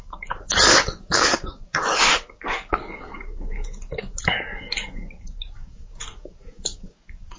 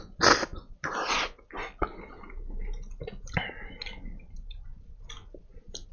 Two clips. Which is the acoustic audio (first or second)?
second